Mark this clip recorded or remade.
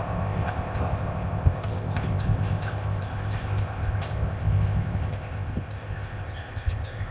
remade